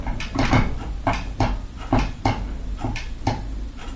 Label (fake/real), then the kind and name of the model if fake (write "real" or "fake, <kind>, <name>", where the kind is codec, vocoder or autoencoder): real